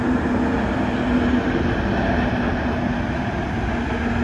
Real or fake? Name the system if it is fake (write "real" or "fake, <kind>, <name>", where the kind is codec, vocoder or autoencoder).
real